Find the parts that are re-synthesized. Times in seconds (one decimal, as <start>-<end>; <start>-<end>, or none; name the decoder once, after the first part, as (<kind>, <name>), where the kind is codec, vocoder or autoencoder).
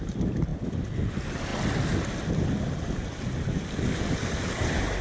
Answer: none